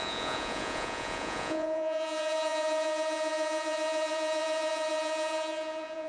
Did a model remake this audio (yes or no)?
yes